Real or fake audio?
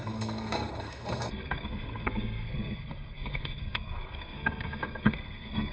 fake